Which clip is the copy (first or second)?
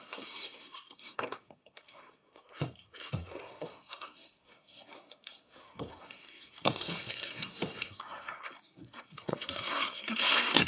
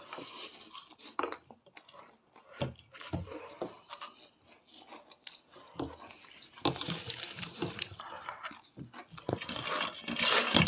first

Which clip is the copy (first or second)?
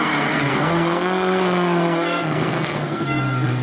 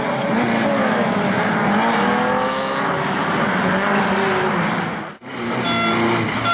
first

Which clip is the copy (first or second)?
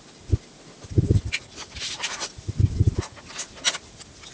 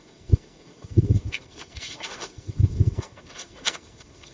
second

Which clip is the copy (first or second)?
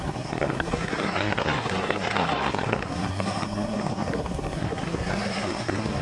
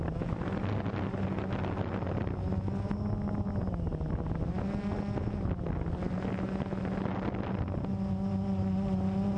first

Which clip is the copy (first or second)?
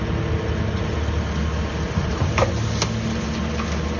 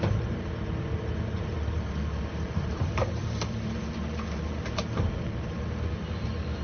second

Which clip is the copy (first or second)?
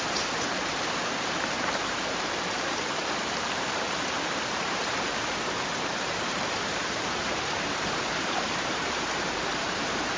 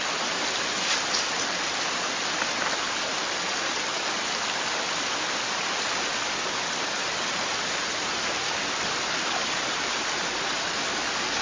first